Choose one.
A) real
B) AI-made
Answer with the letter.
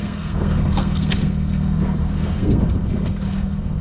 B